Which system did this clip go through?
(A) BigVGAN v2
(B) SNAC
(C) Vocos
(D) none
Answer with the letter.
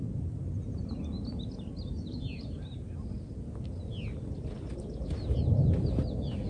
D